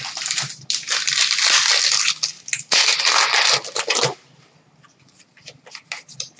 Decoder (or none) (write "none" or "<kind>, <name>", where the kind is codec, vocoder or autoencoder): none